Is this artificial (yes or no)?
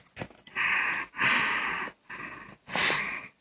no